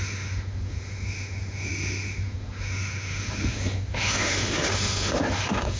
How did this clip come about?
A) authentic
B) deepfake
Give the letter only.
B